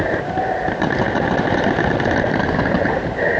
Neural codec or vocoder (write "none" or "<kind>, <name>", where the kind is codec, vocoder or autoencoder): none